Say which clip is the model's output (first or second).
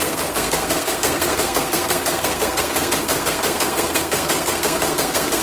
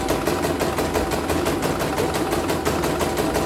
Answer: first